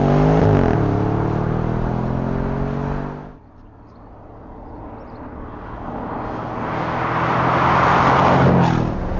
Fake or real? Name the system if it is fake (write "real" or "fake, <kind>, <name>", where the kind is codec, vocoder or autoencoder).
real